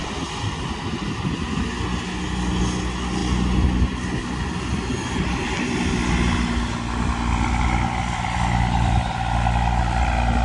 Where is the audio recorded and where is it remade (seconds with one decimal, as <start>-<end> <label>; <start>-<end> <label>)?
0.0-10.4 recorded